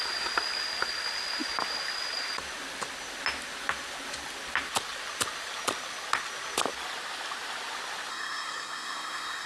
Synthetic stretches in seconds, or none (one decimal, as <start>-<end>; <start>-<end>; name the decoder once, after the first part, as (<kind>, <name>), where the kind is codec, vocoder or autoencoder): 8.1-9.5 (codec, SNAC)